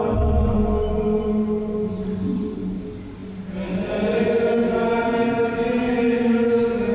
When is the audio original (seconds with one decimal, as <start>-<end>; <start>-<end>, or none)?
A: 0.0-6.9